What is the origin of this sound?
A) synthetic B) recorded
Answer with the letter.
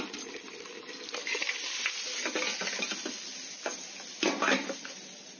B